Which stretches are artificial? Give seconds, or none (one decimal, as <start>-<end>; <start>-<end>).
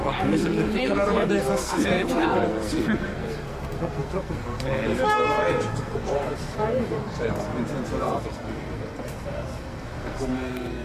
0.0-7.5; 8.0-10.8